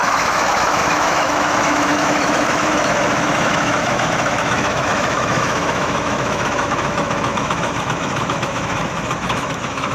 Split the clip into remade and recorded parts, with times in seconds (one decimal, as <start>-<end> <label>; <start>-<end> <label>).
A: 0.0-9.9 remade